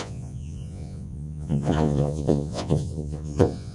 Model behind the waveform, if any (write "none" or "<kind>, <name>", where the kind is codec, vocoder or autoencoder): vocoder, Vocos